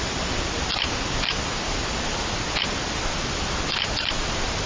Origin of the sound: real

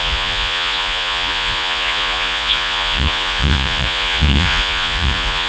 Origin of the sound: fake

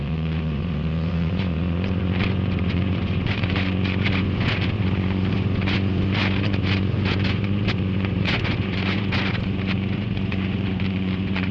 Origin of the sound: fake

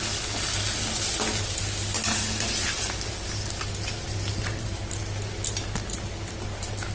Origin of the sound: real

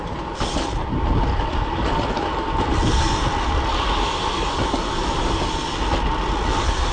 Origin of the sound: real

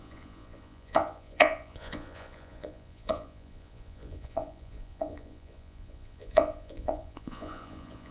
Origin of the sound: fake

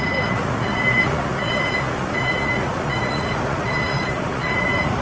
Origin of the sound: fake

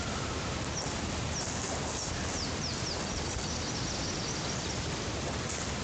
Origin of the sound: real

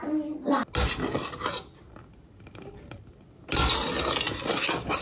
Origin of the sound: real